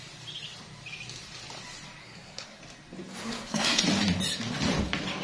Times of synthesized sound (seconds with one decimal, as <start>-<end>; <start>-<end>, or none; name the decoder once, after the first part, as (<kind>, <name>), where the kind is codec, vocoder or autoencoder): 2.0-2.6 (codec, SNAC); 3.2-3.8